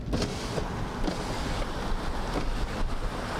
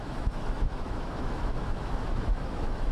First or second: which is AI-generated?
second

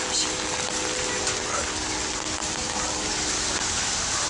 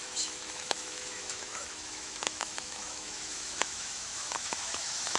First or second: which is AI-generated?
second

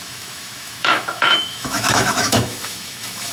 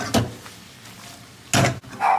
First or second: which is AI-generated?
first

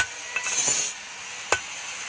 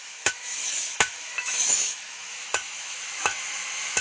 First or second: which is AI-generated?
second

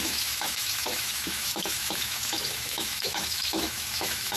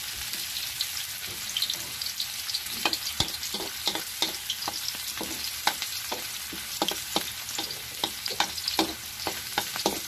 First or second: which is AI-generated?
first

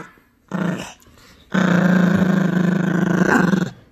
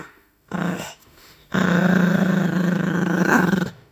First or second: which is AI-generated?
second